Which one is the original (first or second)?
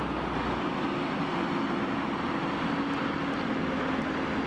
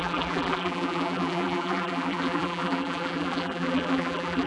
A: first